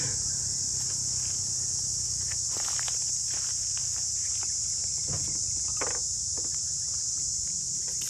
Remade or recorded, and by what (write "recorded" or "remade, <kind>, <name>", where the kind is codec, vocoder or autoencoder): recorded